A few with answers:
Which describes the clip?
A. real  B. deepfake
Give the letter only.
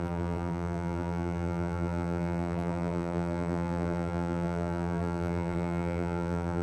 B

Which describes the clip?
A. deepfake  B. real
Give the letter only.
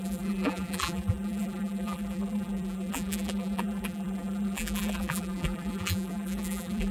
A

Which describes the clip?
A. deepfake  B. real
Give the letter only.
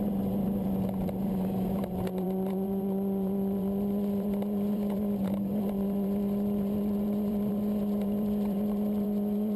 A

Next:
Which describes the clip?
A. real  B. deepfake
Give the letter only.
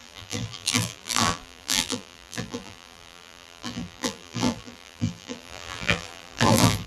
B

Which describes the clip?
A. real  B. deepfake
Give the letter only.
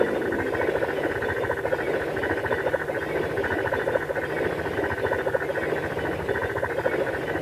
A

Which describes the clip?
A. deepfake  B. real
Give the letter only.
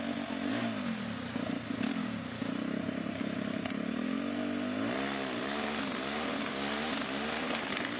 B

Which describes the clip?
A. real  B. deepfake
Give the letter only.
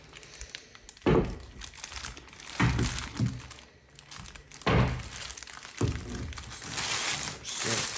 A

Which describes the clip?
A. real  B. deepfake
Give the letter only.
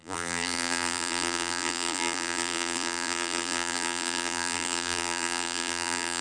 B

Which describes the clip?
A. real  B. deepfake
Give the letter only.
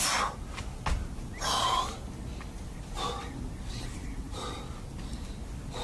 A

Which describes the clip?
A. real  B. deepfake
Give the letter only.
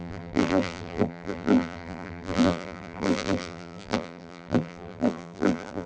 B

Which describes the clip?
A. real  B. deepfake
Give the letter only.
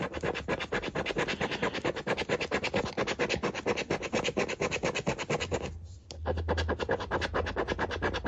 A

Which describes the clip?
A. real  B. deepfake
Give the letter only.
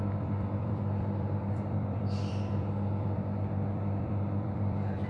B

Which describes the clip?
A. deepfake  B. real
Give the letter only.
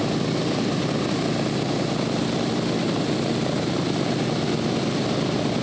B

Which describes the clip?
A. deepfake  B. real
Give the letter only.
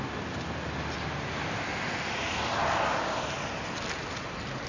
B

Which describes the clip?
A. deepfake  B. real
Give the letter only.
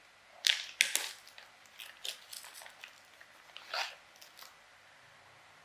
B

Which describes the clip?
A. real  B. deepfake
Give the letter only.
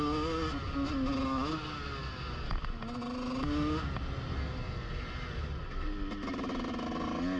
A